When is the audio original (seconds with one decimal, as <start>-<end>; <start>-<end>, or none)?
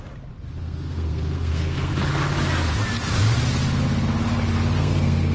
0.0-0.6; 1.9-4.8